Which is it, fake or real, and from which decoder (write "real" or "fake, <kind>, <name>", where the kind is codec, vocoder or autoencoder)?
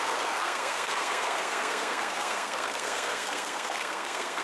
fake, codec, SNAC